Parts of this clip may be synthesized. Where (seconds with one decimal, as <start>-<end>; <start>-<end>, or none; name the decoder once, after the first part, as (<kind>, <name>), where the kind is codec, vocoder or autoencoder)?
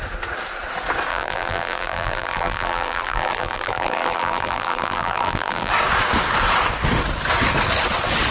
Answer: 1.1-5.7 (vocoder, BigVGAN v2)